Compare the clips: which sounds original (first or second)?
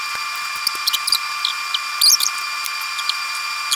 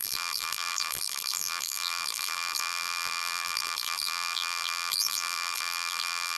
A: first